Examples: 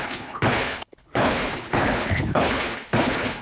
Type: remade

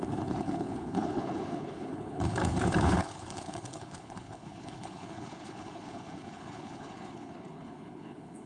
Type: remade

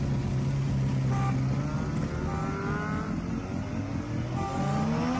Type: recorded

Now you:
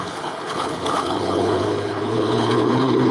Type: remade